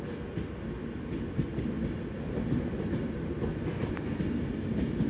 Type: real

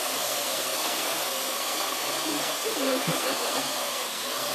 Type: fake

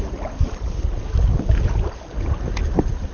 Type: real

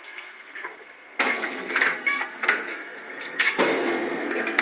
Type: fake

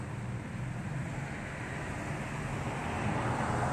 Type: real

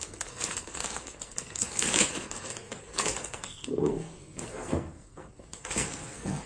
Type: fake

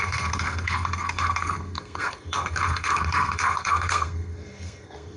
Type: fake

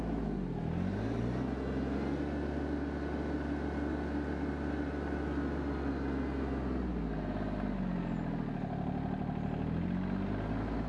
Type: real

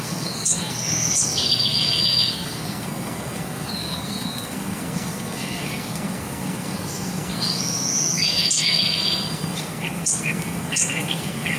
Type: fake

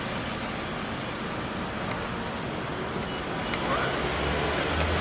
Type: real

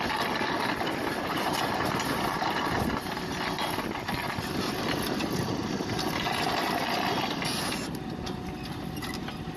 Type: real